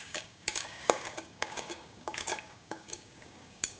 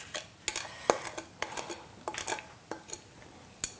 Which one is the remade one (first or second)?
first